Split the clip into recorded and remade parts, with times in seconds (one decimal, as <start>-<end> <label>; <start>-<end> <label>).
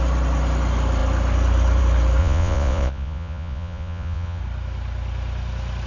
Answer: 0.0-2.2 recorded; 2.2-4.4 remade; 4.4-5.9 recorded